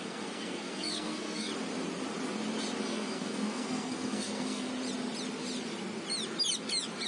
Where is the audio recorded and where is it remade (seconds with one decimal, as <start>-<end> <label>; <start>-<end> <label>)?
0.0-1.5 remade; 1.5-2.8 recorded; 2.8-4.7 remade; 4.7-7.1 recorded